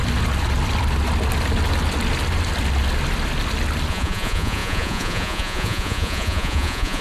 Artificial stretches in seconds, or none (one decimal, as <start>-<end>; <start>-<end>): 3.9-7.0